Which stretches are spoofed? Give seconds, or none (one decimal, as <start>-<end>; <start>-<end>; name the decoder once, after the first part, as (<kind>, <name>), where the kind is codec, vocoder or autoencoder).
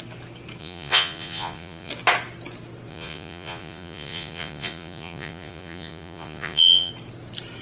0.6-1.9 (vocoder, Vocos); 2.9-6.9